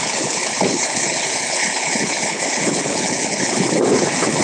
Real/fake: fake